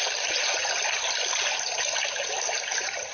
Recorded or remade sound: recorded